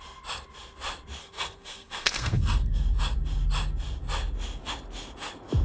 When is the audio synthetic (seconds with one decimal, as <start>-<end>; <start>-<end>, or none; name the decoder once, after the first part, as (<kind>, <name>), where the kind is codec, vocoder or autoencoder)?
1.2-2.8 (codec, SNAC)

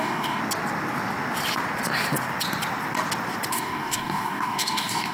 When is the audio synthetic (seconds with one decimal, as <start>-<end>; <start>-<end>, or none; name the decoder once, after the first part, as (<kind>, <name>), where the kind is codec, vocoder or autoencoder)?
0.0-0.4 (codec, DAC); 3.5-5.1

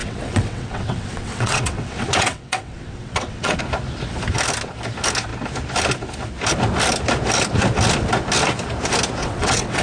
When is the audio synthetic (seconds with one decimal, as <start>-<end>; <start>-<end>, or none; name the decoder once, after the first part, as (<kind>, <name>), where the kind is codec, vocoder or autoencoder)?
0.0-3.6 (vocoder, WaveNeXt); 9.2-9.8

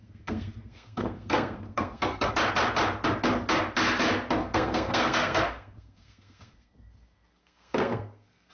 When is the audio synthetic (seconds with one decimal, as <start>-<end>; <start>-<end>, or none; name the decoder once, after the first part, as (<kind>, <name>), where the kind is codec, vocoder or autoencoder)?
0.0-2.3 (codec, SNAC); 4.4-8.5

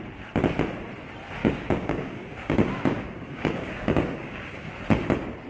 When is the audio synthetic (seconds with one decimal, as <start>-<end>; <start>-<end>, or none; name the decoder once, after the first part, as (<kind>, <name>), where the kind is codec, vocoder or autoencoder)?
1.4-4.7 (codec, DAC)

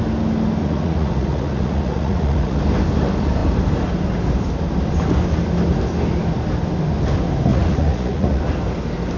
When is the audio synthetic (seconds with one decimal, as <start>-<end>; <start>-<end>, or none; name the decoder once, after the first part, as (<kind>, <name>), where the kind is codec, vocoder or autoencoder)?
0.6-2.6 (vocoder, Vocos); 7.5-8.4